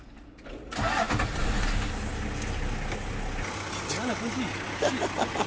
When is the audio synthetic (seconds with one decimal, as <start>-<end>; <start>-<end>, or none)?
none